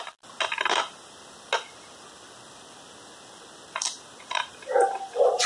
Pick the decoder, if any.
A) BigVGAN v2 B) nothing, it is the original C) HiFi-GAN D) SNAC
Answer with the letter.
B